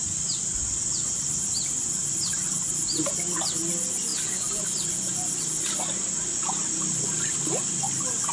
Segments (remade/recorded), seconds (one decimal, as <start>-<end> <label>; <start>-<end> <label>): 0.0-8.3 recorded